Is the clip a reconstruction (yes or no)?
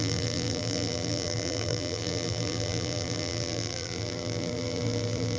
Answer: yes